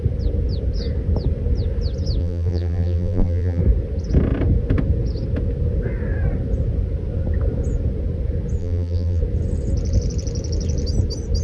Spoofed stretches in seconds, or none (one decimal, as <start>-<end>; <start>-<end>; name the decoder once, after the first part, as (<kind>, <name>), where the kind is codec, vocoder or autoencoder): 2.2-3.6 (vocoder, BigVGAN v2); 8.6-9.2